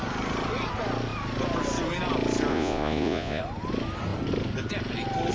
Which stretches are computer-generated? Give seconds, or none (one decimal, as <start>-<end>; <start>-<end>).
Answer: 2.5-3.4